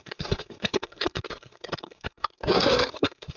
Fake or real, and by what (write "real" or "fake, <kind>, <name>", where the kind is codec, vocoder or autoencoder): fake, codec, SNAC